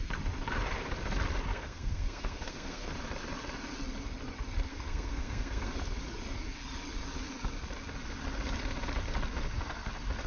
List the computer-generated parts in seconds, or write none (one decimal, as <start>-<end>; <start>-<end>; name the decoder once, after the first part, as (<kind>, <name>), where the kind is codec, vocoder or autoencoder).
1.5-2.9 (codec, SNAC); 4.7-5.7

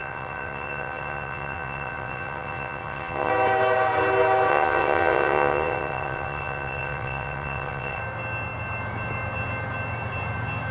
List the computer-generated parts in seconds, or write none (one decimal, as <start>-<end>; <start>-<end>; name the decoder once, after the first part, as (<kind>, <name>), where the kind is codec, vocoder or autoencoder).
0.0-3.3 (vocoder, WaveNeXt); 4.5-8.0

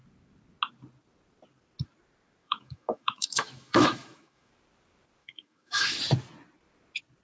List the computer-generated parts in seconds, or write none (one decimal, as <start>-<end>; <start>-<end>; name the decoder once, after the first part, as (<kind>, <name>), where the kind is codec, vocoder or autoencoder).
2.4-4.5 (autoencoder, DAC-VAE); 5.2-6.0

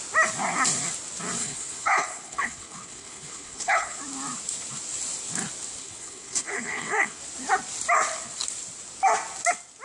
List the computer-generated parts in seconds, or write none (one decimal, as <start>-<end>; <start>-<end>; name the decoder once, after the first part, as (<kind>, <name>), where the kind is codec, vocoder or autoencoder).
1.4-4.0 (codec, HILCodec); 5.8-7.2

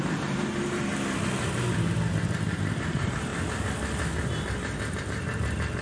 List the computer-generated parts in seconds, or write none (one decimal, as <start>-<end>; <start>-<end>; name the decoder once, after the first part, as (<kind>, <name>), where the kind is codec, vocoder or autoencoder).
0.0-0.9 (vocoder, BigVGAN v2); 2.7-3.3; 5.0-5.8